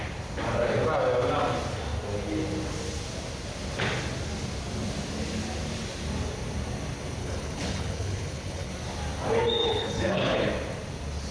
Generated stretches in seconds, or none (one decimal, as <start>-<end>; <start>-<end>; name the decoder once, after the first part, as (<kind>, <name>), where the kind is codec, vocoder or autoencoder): 7.2-8.7 (codec, HILCodec); 9.6-10.5

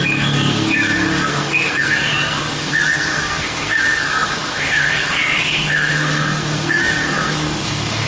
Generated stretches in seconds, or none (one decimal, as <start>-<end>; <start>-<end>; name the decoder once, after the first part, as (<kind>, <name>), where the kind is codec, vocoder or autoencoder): 0.0-8.1 (codec, SNAC)

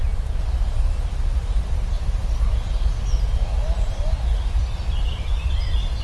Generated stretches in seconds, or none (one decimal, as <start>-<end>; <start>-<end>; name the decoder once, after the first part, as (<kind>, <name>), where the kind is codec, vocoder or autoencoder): 0.0-2.2 (vocoder, BigVGAN v2); 3.9-6.0

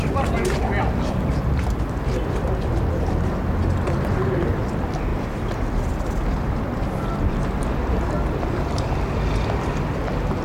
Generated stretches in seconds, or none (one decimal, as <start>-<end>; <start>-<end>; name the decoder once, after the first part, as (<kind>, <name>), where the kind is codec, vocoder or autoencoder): 5.1-7.2 (vocoder, BigVGAN v2)

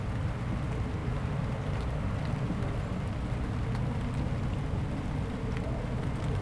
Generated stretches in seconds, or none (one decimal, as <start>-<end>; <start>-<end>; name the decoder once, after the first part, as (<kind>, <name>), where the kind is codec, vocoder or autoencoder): none

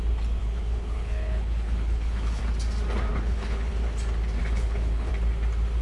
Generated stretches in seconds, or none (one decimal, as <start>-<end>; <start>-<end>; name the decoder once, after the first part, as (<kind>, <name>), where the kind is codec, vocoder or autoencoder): 0.4-2.4 (codec, HILCodec); 3.1-3.7; 4.4-5.1